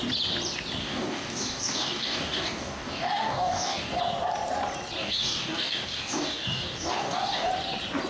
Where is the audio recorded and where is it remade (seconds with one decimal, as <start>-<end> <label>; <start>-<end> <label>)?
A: 0.0-0.8 recorded; 0.8-4.0 remade; 4.0-5.0 recorded; 5.0-7.5 remade; 7.5-8.1 recorded